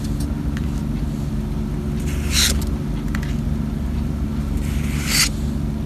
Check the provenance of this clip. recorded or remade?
recorded